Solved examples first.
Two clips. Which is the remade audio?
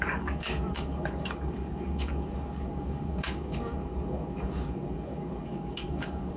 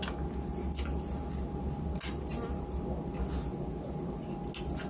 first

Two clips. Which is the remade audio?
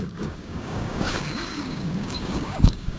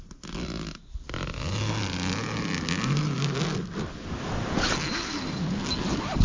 first